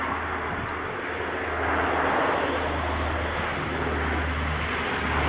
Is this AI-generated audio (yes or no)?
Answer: no